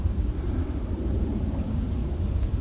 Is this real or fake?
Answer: fake